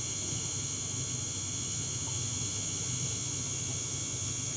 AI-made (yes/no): no